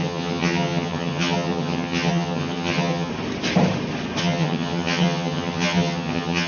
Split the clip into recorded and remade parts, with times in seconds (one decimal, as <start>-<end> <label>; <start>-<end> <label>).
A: 0.0-3.1 remade; 3.1-4.2 recorded; 4.2-6.5 remade